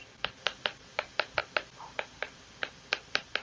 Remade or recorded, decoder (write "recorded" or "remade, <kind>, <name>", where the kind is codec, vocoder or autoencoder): recorded